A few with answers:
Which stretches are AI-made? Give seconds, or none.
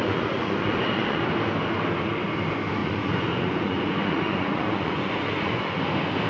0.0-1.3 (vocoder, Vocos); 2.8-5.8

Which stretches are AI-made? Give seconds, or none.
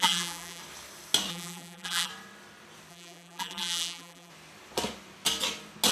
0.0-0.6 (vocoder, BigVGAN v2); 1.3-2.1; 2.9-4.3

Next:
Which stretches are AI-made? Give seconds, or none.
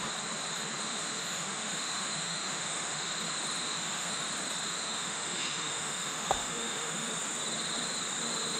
0.8-3.1 (autoencoder, DAC-VAE); 3.6-4.2; 4.7-7.1